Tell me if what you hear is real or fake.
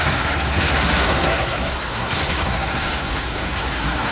fake